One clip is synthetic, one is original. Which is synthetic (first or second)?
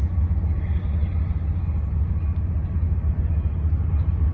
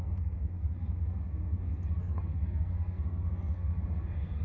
second